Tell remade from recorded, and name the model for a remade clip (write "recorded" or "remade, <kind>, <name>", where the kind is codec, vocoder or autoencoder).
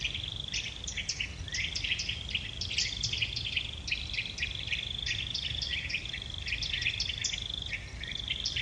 recorded